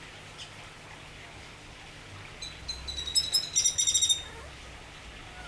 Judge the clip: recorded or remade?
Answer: recorded